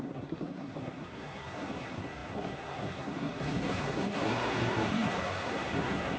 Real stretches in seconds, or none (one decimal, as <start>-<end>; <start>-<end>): none